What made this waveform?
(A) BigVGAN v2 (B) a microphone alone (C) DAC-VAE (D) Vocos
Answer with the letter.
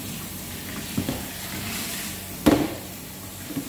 A